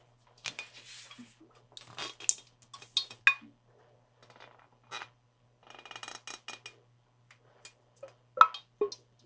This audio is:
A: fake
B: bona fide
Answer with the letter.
B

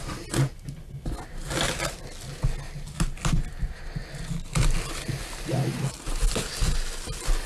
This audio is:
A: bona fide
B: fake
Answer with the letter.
A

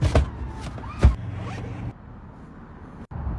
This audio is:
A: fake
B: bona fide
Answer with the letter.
B